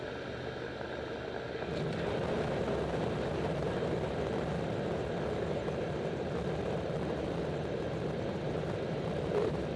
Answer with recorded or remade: recorded